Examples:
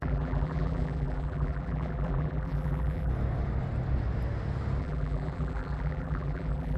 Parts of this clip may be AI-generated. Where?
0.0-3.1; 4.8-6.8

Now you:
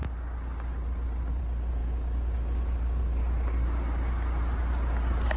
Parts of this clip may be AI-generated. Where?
none